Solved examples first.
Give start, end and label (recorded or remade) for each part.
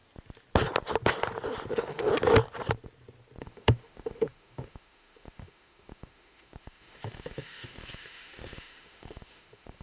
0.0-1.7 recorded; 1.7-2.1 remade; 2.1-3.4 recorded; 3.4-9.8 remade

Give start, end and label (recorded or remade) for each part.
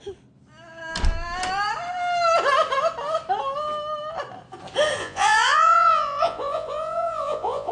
0.0-5.0 recorded; 5.0-7.7 remade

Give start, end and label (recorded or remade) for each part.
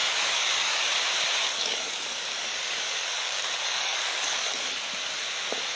0.0-0.9 remade; 0.9-1.4 recorded; 1.4-4.9 remade; 4.9-5.8 recorded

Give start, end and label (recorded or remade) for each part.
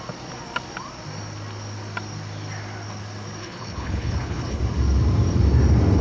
0.0-3.4 recorded; 3.4-4.6 remade; 4.6-6.0 recorded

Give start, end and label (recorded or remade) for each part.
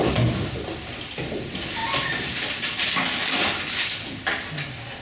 0.0-5.0 recorded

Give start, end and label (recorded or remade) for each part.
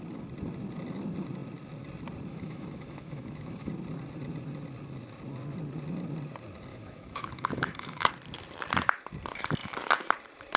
0.0-2.3 recorded; 2.3-3.7 remade; 3.7-6.7 recorded; 6.7-8.1 remade; 8.1-10.6 recorded